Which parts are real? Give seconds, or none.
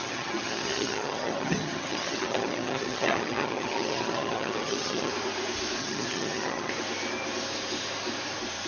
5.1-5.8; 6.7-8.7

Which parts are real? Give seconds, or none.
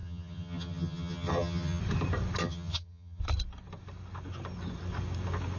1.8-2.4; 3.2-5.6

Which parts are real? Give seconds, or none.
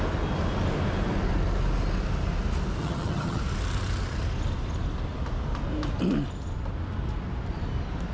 0.0-2.8; 3.4-8.1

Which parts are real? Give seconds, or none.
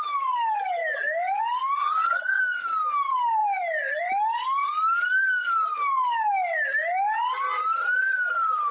0.0-1.8; 2.4-8.7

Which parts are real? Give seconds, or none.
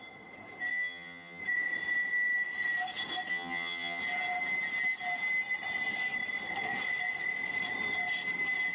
0.0-0.7; 1.4-3.3; 4.0-8.7